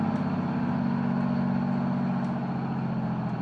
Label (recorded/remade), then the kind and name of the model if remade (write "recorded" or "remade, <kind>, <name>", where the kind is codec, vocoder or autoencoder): recorded